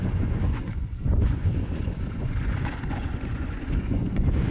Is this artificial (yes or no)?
yes